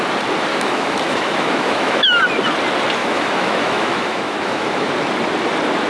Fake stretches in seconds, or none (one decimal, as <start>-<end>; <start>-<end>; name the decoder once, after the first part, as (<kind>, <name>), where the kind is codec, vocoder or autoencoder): 0.5-2.3 (autoencoder, DAC-VAE); 3.0-4.9